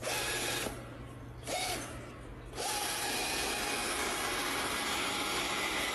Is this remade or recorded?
recorded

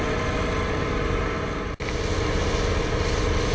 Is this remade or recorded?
recorded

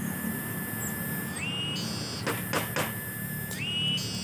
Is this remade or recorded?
recorded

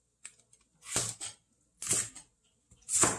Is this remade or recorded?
recorded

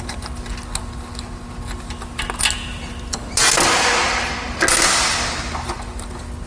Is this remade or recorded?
recorded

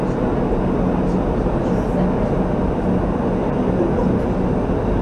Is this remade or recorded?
recorded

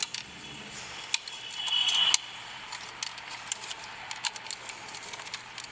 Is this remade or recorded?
recorded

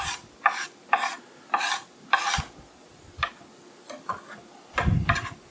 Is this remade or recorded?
recorded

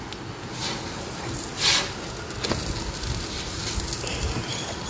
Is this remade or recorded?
recorded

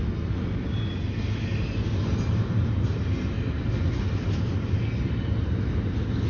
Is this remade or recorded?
recorded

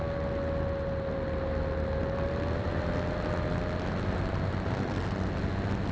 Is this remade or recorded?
recorded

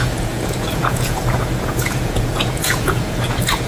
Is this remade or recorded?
remade